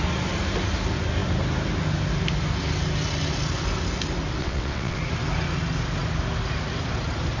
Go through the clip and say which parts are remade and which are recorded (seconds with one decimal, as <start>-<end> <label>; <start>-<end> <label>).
0.0-4.4 recorded; 4.4-5.0 remade; 5.0-7.4 recorded